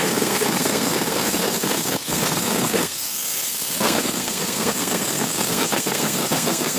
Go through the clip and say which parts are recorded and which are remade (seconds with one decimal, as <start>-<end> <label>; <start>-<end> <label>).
0.0-6.8 remade

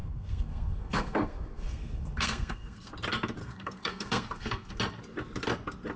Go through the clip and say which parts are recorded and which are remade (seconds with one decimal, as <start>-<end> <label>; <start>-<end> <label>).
0.0-2.9 remade; 2.9-3.4 recorded; 3.4-4.8 remade; 4.8-6.0 recorded

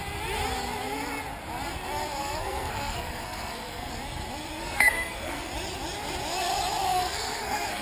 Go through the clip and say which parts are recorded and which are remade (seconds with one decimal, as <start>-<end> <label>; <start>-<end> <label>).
0.0-2.2 recorded; 2.2-3.9 remade; 3.9-4.6 recorded; 4.6-5.5 remade; 5.5-6.9 recorded; 6.9-7.8 remade

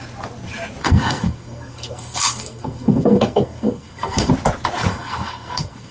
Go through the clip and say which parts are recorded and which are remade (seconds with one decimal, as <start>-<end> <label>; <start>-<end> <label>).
0.0-0.8 recorded; 0.8-4.3 remade; 4.3-4.9 recorded; 4.9-5.9 remade

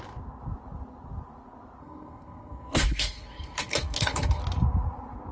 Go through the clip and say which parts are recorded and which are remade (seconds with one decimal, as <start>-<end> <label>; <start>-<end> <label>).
0.0-1.8 recorded; 1.8-4.4 remade; 4.4-5.3 recorded